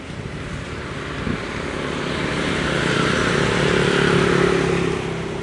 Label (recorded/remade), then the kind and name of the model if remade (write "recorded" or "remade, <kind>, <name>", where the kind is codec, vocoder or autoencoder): recorded